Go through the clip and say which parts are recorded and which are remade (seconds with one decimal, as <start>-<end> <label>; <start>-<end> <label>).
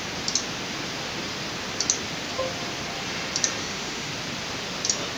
0.0-3.6 recorded; 3.6-4.1 remade; 4.1-5.2 recorded